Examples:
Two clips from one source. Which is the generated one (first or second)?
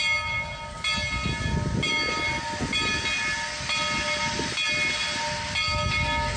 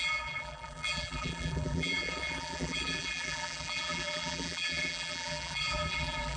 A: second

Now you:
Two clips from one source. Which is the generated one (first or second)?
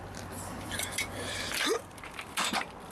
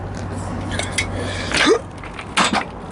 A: first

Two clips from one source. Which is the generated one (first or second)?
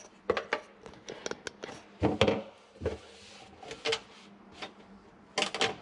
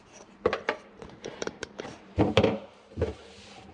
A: second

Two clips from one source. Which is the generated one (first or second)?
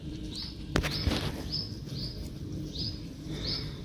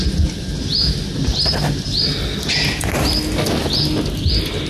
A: first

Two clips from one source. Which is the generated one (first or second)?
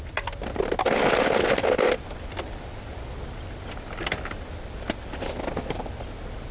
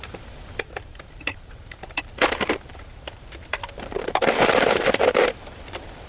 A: second